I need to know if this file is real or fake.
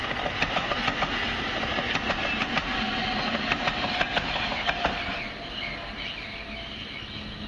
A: real